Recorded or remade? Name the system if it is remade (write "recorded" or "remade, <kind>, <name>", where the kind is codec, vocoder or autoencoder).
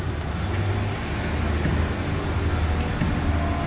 recorded